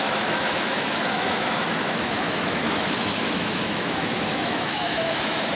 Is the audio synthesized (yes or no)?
yes